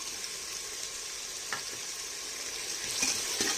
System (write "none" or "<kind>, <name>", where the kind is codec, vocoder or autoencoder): none